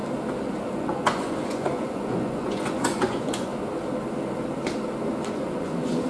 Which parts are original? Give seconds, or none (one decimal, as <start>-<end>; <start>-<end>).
0.0-0.8; 3.5-5.3